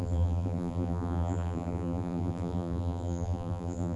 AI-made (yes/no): yes